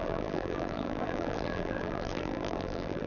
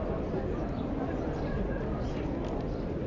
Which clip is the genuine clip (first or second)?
second